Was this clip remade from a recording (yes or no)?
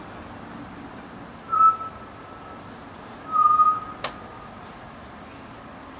no